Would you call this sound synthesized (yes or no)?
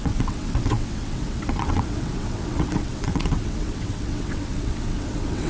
yes